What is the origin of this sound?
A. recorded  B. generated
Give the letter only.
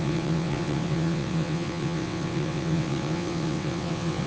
B